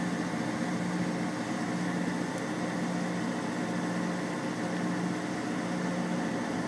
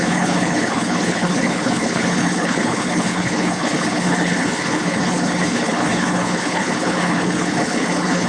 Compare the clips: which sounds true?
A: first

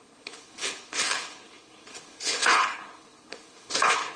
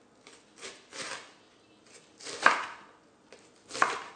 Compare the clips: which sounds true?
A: second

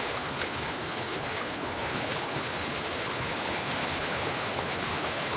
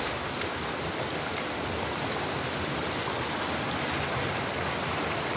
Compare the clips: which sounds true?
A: second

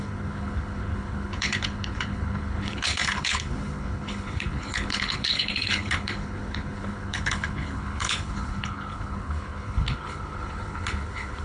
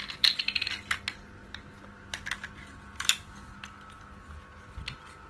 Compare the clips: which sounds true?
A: second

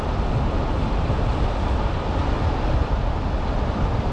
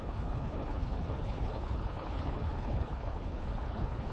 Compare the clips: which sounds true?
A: first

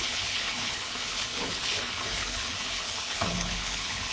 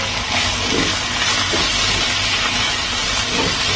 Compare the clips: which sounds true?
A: second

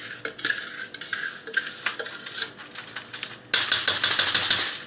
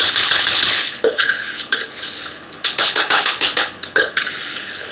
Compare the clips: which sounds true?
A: first